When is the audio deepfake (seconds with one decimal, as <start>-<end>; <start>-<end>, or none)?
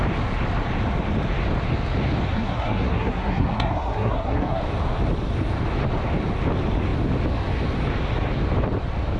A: 2.3-4.6